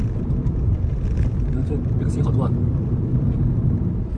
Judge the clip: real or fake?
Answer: real